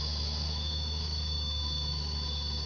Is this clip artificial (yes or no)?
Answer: yes